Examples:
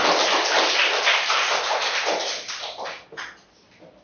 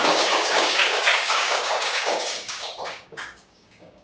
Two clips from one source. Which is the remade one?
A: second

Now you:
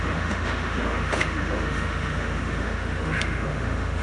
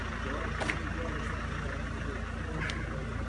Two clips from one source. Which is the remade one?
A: first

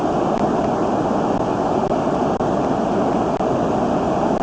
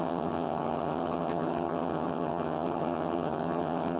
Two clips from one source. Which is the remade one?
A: second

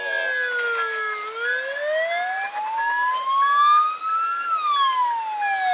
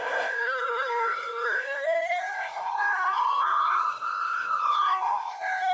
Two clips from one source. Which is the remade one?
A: second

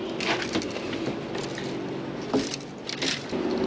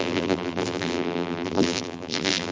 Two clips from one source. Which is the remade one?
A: second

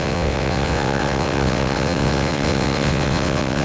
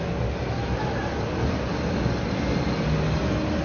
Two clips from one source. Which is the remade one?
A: first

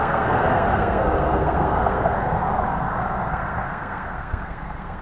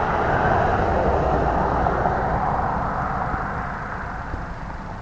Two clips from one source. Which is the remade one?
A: first